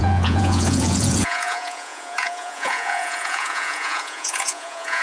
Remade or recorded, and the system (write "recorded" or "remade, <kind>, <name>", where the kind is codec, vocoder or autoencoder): remade, vocoder, Vocos